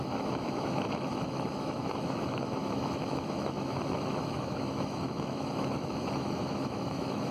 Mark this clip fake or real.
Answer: fake